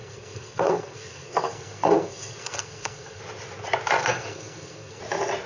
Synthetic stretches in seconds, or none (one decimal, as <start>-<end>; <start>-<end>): 0.0-3.2; 4.0-5.0